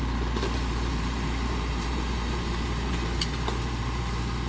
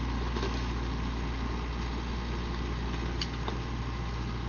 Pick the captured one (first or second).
second